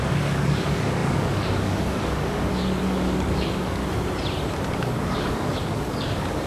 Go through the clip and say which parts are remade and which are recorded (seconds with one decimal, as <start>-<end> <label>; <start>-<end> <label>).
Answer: 0.0-3.8 remade; 3.8-4.8 recorded; 4.8-6.5 remade